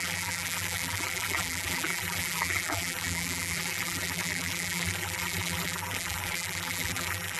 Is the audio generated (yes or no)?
yes